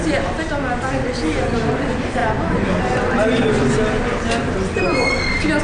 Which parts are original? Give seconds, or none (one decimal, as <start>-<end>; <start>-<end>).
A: 0.0-5.6